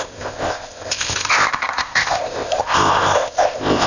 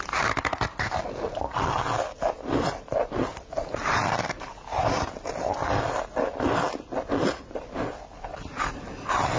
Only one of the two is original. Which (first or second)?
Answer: second